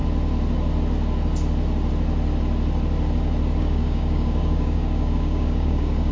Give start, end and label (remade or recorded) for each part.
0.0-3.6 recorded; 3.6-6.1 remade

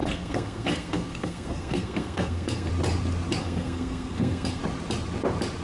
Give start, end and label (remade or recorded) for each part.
0.0-2.7 remade; 2.7-3.4 recorded; 3.4-4.6 remade; 4.6-5.6 recorded

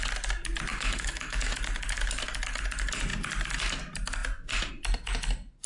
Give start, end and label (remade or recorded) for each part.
0.0-0.7 recorded; 0.7-1.6 remade; 1.6-5.7 recorded

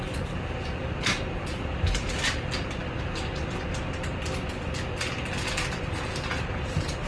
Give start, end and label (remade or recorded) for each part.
0.0-7.1 recorded